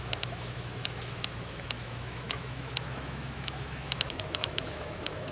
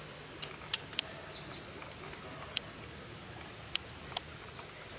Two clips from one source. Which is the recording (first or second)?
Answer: second